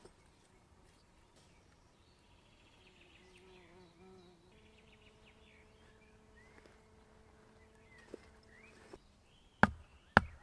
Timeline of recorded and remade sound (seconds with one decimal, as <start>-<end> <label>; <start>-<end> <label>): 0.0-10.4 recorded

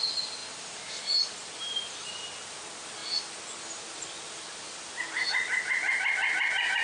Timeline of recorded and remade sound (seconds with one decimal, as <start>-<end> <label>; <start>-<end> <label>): 0.0-0.4 recorded; 0.4-1.9 remade; 1.9-6.8 recorded

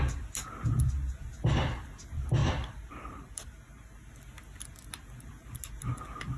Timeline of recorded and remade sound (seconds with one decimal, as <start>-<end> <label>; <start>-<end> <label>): 0.0-2.4 recorded; 2.4-4.1 remade; 4.1-6.4 recorded

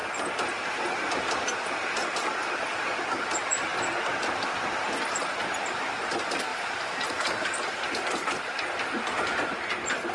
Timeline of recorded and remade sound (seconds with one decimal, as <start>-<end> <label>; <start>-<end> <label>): 0.0-2.5 recorded; 2.5-10.1 remade

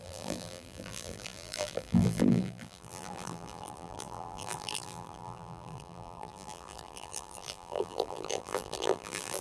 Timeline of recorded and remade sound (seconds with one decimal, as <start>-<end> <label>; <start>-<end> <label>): 0.0-9.4 remade